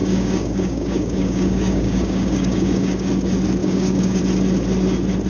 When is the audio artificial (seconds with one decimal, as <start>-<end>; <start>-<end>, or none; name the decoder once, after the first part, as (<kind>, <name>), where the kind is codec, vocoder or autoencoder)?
0.0-3.1 (codec, DAC); 3.6-4.2